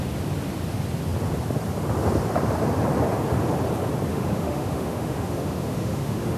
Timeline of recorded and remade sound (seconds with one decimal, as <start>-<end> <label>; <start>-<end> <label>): 0.0-4.1 recorded; 4.1-6.4 remade